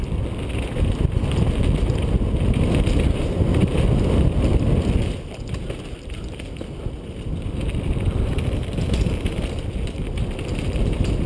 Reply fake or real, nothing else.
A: real